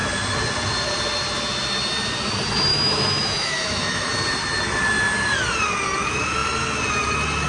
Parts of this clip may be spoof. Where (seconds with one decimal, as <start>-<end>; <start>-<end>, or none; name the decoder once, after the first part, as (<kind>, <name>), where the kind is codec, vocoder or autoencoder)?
2.7-4.1 (autoencoder, DAC-VAE)